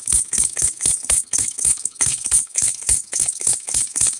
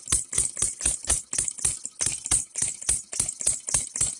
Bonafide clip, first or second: second